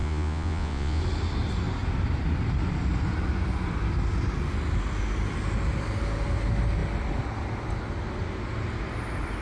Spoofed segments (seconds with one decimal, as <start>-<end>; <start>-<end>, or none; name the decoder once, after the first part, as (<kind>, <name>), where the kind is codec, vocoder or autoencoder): 0.0-1.0 (vocoder, Vocos)